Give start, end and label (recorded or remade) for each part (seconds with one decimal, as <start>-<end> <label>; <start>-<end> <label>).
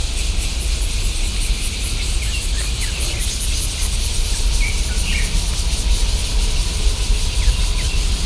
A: 0.0-4.8 recorded; 4.8-8.3 remade